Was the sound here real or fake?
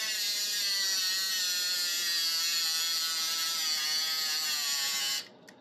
real